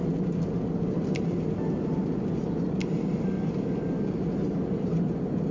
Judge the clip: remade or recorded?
recorded